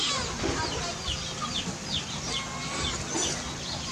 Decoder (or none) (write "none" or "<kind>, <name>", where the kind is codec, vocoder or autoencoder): none